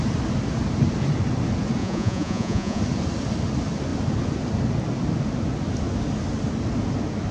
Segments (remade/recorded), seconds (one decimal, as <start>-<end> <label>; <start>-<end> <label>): 0.0-1.8 recorded; 1.8-2.8 remade; 2.8-7.3 recorded